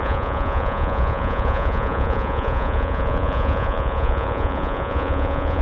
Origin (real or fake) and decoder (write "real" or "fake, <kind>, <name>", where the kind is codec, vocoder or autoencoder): fake, vocoder, Vocos